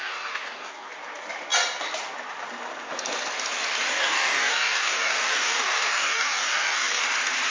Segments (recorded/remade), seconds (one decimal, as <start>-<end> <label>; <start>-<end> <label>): 0.0-0.9 remade; 0.9-3.9 recorded; 3.9-7.0 remade; 7.0-7.5 recorded